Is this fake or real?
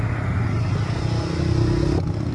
real